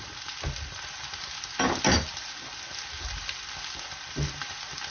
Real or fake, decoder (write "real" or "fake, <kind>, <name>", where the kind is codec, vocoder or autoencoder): real